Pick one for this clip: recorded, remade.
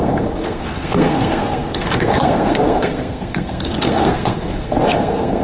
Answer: remade